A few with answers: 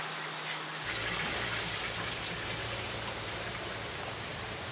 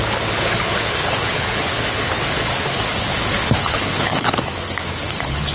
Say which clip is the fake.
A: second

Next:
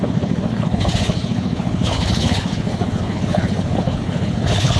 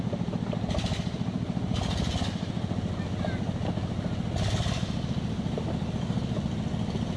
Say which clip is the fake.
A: first